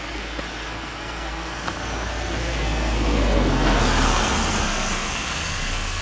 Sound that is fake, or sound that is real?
fake